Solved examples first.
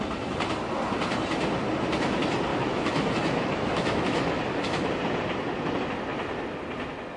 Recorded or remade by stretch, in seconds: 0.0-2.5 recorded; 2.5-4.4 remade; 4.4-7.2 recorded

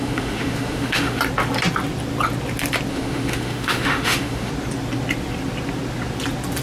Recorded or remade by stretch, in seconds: 0.0-1.2 remade; 1.2-2.9 recorded; 2.9-4.5 remade; 4.5-6.6 recorded

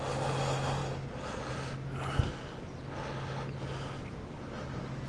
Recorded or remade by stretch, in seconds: 0.0-5.1 recorded

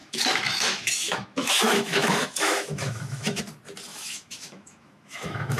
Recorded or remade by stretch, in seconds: 0.0-3.4 remade; 3.4-3.9 recorded; 3.9-5.6 remade

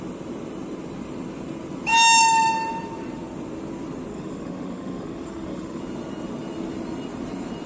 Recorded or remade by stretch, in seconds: 0.0-4.1 recorded; 4.1-5.8 remade; 5.8-7.7 recorded

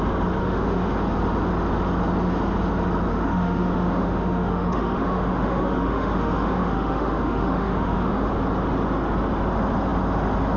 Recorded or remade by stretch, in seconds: 0.0-0.4 recorded; 0.4-0.9 remade; 0.9-3.1 recorded; 3.1-8.3 remade; 8.3-10.6 recorded